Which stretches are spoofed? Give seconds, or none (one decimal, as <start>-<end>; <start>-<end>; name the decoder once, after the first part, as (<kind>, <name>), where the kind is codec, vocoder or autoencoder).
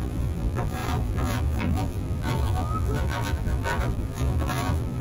0.0-5.0 (vocoder, BigVGAN v2)